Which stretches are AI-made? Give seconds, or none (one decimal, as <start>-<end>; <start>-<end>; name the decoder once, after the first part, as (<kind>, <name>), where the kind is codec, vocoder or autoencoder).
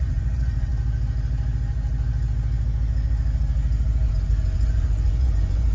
0.0-0.7 (vocoder, Vocos); 4.1-5.7